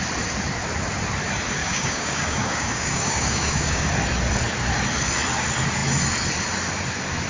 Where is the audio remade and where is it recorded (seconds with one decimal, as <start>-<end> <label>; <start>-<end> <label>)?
0.0-1.6 recorded; 1.6-3.9 remade; 3.9-7.3 recorded